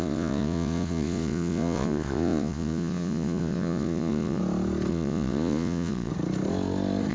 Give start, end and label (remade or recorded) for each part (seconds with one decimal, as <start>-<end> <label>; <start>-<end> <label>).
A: 0.0-4.4 remade; 4.4-4.9 recorded; 4.9-6.1 remade; 6.1-7.1 recorded